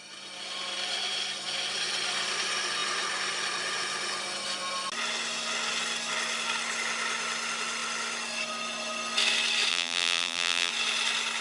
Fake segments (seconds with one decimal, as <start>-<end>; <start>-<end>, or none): 9.7-10.7